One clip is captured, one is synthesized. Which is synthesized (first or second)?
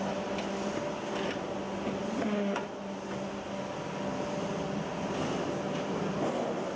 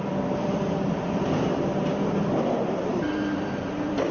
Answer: second